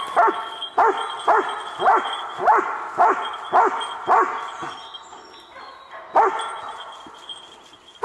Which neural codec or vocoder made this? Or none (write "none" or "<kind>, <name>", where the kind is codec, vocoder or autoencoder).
none